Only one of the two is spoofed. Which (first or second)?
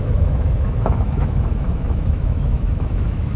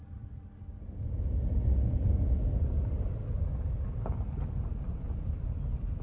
first